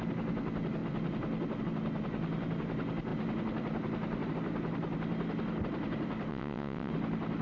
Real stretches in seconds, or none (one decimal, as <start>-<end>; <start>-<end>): 0.0-6.3; 6.9-7.4